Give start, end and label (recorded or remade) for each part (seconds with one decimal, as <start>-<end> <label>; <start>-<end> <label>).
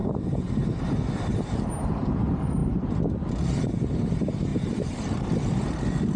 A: 0.0-2.2 remade; 2.2-4.5 recorded; 4.5-5.6 remade; 5.6-6.2 recorded